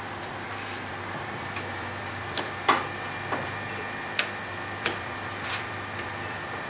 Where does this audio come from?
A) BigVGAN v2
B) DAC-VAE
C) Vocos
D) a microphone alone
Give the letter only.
A